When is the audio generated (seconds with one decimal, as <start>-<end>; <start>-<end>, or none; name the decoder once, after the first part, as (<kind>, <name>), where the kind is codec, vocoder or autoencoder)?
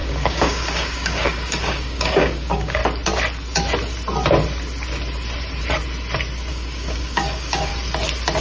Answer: 0.0-2.8 (codec, DAC); 6.5-7.7